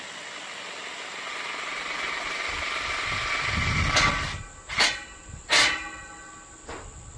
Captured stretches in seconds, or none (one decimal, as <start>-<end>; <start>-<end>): 0.0-7.2